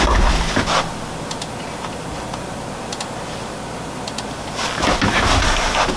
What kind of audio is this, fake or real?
real